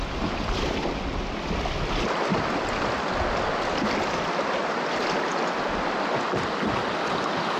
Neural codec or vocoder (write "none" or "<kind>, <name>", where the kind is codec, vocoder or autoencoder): none